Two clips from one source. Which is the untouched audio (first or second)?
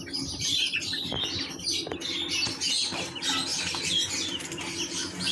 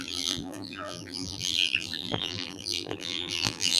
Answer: first